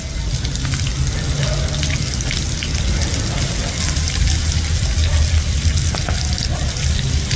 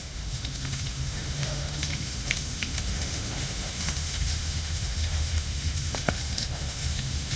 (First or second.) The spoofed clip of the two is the second